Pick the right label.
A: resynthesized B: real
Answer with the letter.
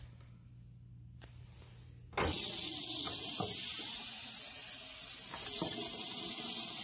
B